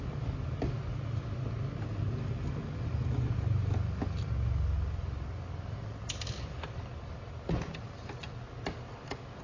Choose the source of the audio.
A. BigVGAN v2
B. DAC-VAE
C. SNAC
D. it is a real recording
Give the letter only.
D